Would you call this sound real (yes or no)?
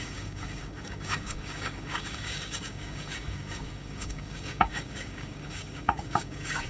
no